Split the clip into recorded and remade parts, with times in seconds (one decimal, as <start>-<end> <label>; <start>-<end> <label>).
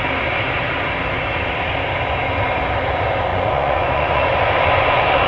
0.0-3.3 recorded; 3.3-5.3 remade